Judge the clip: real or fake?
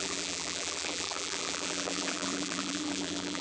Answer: fake